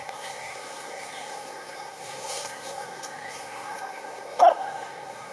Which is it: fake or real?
fake